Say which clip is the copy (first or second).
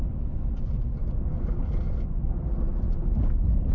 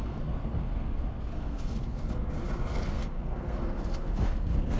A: second